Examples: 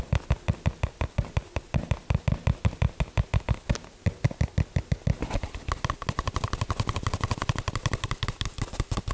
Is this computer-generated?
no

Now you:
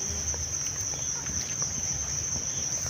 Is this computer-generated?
no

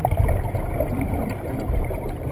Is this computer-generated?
no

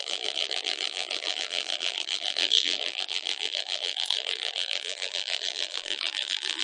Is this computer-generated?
yes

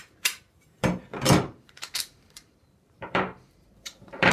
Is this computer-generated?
yes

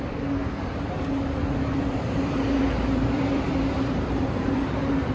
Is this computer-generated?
yes